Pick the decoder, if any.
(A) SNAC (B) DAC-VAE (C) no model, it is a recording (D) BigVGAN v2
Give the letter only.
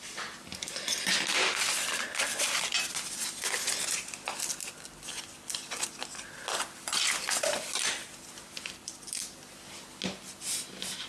C